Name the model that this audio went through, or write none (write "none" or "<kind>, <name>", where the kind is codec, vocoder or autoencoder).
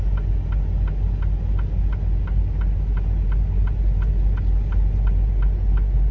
none